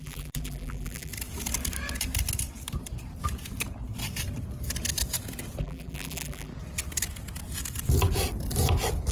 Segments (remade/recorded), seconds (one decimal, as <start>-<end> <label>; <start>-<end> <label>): 0.0-1.1 remade; 1.1-5.6 recorded; 5.6-6.5 remade; 6.5-9.1 recorded

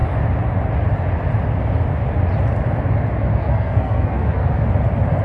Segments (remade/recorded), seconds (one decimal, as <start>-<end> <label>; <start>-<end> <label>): 0.0-3.3 recorded; 3.3-4.5 remade; 4.5-5.2 recorded

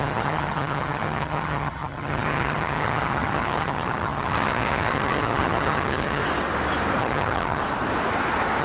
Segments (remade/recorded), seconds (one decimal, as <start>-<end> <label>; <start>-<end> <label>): 0.0-6.2 remade; 6.2-7.0 recorded; 7.0-7.6 remade; 7.6-8.6 recorded